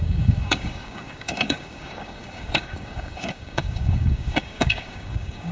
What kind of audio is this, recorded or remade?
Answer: remade